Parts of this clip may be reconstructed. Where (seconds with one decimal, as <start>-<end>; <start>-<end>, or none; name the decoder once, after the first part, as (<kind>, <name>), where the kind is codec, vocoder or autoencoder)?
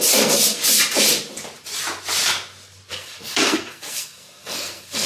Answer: 0.0-0.6 (codec, SNAC); 2.9-5.1